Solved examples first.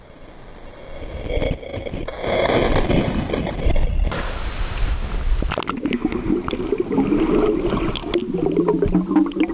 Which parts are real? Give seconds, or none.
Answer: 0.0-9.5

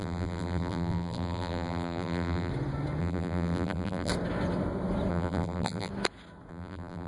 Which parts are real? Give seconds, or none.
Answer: 2.5-3.0; 4.1-5.1; 5.9-6.5

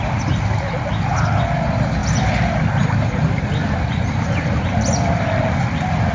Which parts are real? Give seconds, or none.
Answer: 0.0-6.1

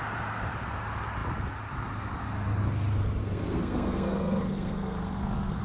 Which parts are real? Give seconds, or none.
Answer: 0.0-3.2

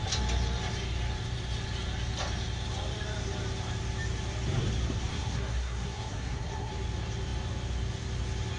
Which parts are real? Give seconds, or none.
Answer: 0.0-5.1; 6.7-8.6

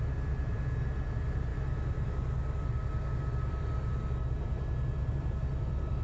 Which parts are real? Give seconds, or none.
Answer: 0.0-6.0

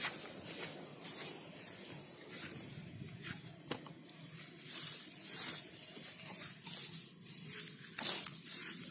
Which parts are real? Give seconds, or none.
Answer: 0.0-8.9